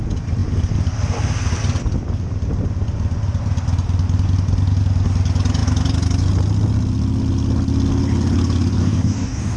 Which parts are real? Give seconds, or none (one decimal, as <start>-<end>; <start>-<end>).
0.0-8.8